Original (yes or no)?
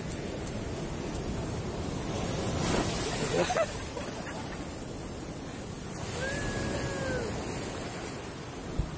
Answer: yes